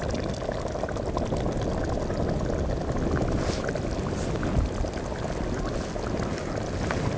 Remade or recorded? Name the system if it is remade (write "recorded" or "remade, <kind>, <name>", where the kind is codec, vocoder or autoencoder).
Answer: recorded